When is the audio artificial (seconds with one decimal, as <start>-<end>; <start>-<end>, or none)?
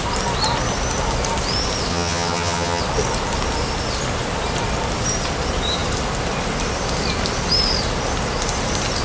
1.9-2.8